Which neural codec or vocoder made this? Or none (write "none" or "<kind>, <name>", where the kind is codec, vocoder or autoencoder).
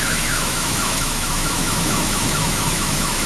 autoencoder, DAC-VAE